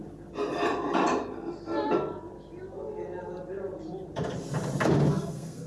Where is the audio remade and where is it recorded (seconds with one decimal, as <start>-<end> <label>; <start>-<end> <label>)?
0.0-5.1 recorded; 5.1-5.7 remade